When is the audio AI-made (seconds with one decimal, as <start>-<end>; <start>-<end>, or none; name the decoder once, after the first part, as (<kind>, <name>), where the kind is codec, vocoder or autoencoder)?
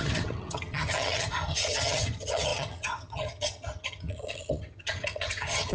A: 0.0-5.7 (vocoder, HiFi-GAN)